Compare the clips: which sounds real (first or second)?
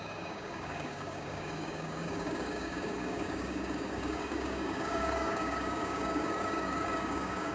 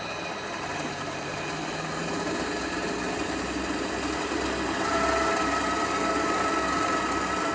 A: second